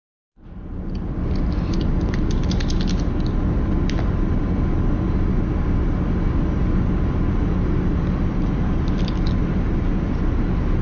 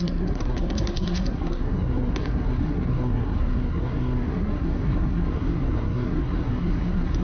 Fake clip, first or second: second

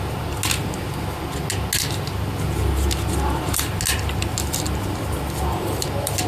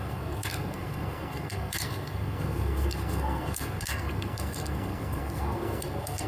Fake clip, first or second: second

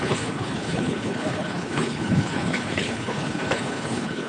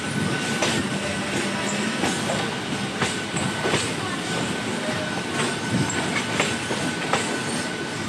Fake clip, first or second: first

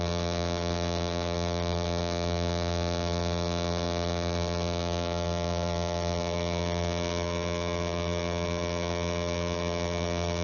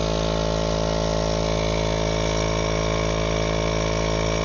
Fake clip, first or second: first